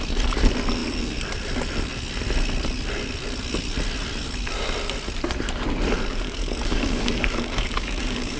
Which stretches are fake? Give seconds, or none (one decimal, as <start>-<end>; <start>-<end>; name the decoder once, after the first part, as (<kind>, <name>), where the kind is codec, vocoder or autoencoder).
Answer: 6.1-8.4 (codec, DAC)